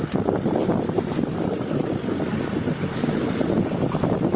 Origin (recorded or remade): remade